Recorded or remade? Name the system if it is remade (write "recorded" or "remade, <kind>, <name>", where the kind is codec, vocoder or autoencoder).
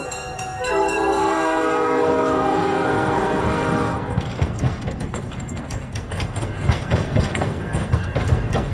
remade, codec, SNAC